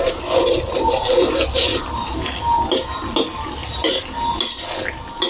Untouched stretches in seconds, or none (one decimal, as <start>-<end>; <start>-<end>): 1.7-5.3